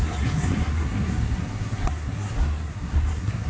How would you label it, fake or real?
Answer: fake